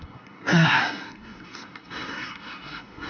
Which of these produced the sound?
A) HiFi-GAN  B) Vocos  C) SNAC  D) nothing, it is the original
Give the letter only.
C